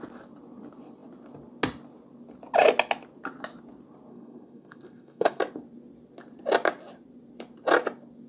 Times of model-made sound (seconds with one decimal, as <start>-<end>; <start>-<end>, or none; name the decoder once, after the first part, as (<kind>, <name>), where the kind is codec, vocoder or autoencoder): 4.1-5.4 (codec, SNAC)